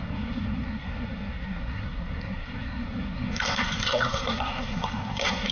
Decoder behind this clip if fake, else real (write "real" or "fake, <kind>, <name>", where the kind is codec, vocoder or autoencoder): fake, codec, SNAC